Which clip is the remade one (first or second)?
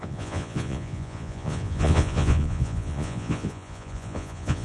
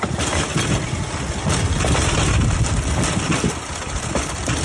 first